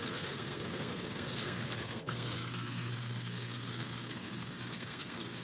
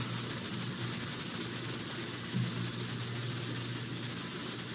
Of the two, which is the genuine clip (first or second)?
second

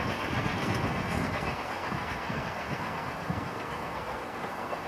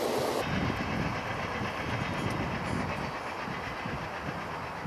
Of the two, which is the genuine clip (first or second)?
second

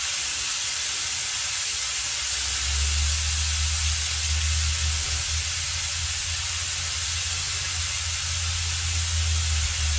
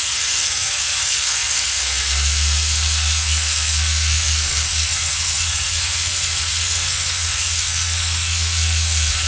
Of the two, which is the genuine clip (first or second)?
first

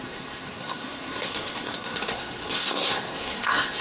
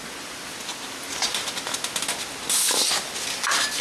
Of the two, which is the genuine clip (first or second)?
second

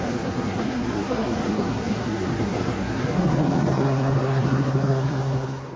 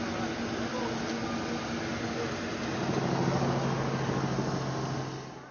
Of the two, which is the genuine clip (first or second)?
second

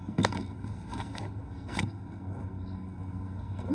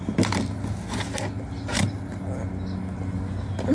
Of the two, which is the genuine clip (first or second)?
second